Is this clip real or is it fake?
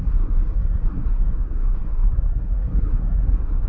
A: fake